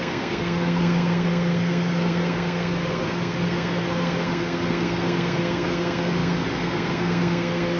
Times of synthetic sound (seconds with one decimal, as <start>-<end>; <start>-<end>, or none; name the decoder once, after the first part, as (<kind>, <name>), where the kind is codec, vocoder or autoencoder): 0.0-7.8 (codec, SNAC)